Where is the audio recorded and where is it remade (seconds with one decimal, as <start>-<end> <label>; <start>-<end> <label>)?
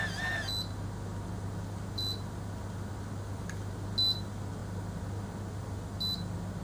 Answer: 0.0-6.6 recorded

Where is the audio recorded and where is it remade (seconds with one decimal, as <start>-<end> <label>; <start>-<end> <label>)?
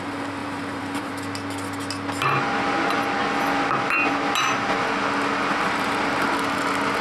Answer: 0.0-0.4 recorded; 0.4-1.1 remade; 1.1-5.5 recorded; 5.5-6.3 remade; 6.3-7.0 recorded